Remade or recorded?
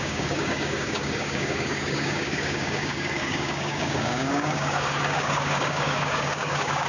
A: remade